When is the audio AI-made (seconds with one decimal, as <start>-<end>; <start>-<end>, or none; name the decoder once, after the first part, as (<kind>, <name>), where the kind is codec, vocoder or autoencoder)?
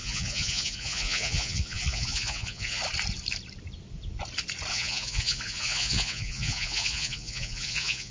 0.0-2.8 (vocoder, Vocos); 4.7-8.1